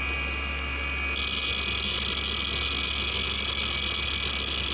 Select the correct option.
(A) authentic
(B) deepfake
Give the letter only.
A